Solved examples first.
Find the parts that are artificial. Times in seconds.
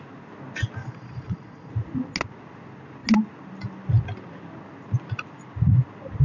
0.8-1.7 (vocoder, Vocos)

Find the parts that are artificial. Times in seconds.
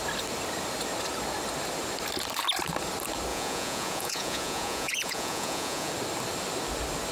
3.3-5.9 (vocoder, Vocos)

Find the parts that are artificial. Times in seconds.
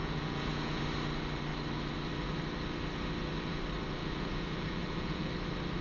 0.0-0.8 (vocoder, Vocos); 4.0-5.3